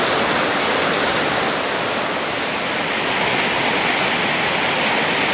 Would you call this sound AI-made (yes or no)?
no